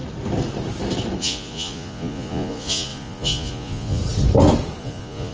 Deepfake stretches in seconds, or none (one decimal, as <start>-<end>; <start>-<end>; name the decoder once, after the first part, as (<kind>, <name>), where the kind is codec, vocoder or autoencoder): 1.2-4.0 (vocoder, Vocos); 4.8-5.3

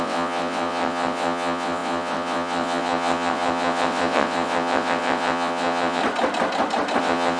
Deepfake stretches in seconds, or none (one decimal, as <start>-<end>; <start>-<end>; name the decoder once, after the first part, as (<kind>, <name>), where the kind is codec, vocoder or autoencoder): 0.0-6.0 (vocoder, WaveNeXt); 7.0-7.4

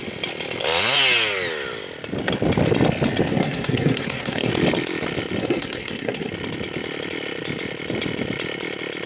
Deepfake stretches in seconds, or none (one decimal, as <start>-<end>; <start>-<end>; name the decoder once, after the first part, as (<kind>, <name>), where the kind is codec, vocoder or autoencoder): 3.3-4.5 (codec, SNAC); 5.4-6.3